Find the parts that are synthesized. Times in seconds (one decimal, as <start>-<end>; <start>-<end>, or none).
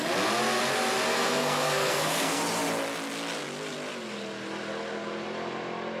1.1-2.4